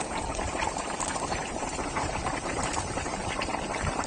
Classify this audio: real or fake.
fake